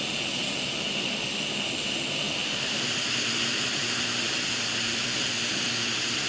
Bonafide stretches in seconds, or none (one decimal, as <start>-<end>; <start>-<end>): 0.0-6.3